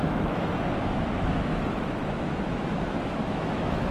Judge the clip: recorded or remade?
remade